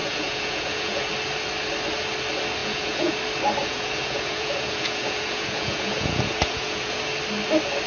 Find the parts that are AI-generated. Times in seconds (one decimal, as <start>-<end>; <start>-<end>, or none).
0.0-1.1; 2.6-3.2; 3.6-7.0